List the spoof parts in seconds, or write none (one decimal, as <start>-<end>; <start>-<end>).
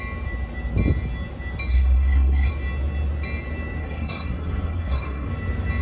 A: 1.7-2.5; 3.8-5.3